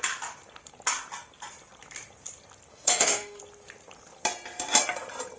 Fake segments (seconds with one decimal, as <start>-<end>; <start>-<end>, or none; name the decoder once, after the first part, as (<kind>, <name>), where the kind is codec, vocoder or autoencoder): 2.7-3.4 (autoencoder, DAC-VAE)